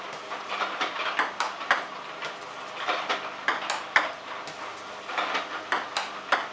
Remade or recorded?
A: recorded